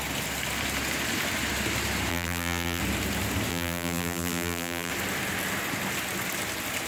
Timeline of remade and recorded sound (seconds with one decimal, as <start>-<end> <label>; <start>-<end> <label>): 0.0-2.1 recorded; 2.1-2.8 remade; 2.8-3.5 recorded; 3.5-4.9 remade; 4.9-6.9 recorded